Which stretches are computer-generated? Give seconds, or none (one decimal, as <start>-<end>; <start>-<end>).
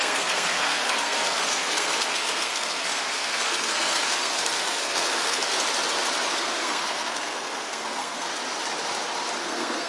0.0-5.5; 6.3-8.3; 9.4-9.9